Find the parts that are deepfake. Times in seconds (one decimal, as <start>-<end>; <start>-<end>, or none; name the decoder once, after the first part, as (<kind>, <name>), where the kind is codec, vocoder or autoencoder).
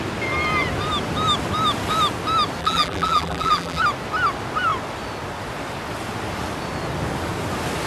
2.6-3.8 (vocoder, BigVGAN v2)